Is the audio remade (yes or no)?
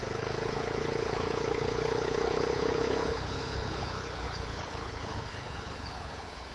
yes